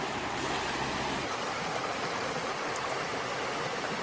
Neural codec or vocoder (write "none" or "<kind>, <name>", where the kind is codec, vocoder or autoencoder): none